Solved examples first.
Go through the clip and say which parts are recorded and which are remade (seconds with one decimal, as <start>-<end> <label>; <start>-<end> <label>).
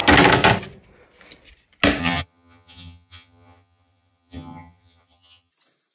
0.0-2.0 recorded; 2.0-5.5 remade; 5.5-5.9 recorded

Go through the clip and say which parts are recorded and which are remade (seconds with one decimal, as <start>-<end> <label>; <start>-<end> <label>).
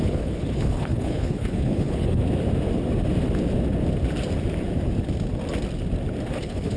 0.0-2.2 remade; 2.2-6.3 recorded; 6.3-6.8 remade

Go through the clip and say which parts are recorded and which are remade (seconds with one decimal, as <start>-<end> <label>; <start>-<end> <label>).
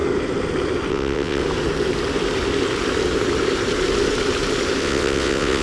0.0-0.9 recorded; 0.9-1.4 remade; 1.4-4.8 recorded; 4.8-5.6 remade